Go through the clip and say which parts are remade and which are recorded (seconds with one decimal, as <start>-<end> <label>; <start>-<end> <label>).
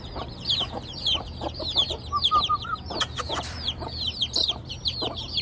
0.0-5.4 remade